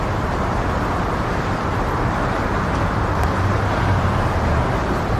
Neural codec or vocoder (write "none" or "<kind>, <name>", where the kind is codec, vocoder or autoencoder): none